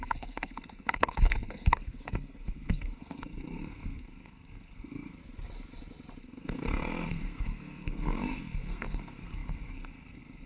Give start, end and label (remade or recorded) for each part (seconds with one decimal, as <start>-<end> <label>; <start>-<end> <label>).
0.0-5.2 remade; 5.2-6.2 recorded; 6.2-10.5 remade